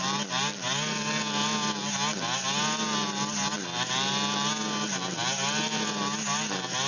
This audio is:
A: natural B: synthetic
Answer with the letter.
A